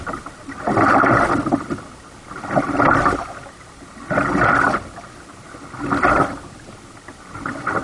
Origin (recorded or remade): recorded